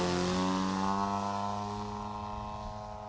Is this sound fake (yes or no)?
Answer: no